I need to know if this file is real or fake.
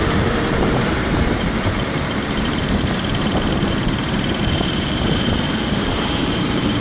fake